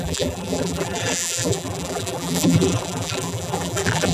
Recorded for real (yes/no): no